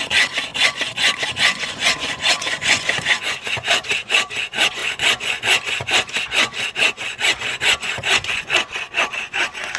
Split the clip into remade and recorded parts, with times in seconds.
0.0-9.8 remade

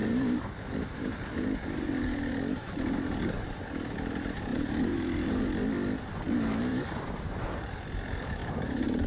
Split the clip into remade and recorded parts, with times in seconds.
0.0-2.3 remade; 2.3-4.5 recorded; 4.5-5.4 remade; 5.4-6.7 recorded; 6.7-7.7 remade; 7.7-8.4 recorded; 8.4-9.1 remade

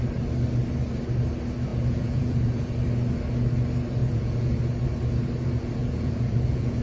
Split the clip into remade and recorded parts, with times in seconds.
0.0-1.7 recorded; 1.7-2.7 remade; 2.7-4.0 recorded; 4.0-4.5 remade; 4.5-5.8 recorded; 5.8-6.8 remade